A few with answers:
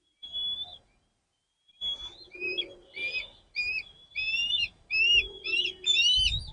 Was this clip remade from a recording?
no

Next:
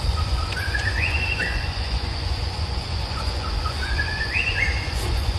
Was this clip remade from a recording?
yes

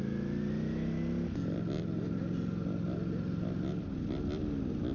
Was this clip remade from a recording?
no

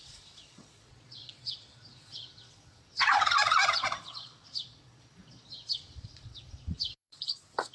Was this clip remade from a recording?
yes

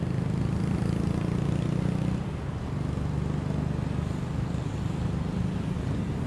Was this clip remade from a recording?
no